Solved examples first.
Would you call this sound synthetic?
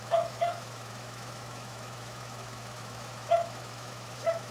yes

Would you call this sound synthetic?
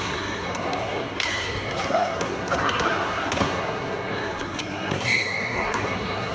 yes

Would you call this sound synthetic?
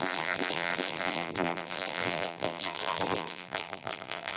yes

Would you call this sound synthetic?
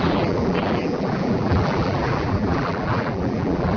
yes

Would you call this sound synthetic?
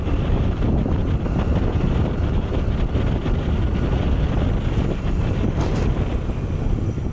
no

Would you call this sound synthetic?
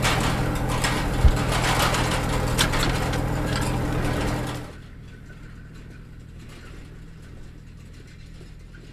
no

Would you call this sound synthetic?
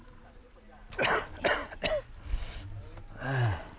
no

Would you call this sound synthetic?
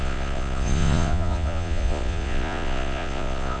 yes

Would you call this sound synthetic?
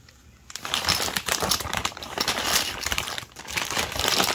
yes